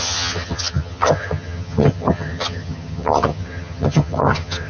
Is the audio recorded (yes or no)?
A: no